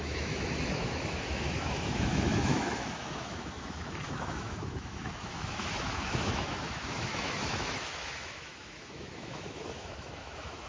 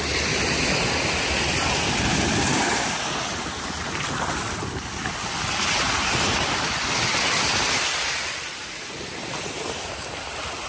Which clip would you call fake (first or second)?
first